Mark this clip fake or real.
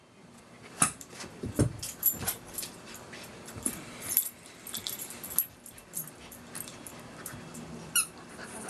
fake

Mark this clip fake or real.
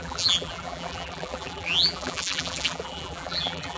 fake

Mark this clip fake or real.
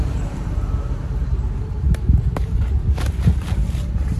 fake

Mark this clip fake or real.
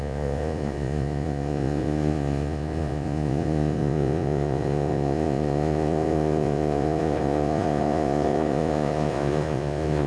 fake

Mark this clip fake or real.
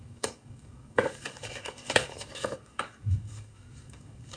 fake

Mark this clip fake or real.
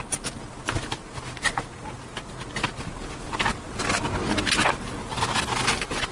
real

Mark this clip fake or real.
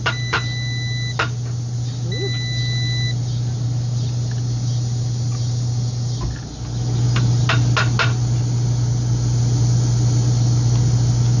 real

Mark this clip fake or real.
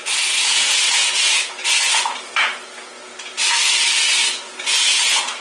fake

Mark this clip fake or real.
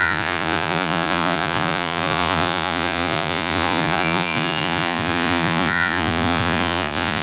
fake